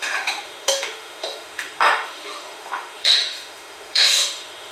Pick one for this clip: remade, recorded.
remade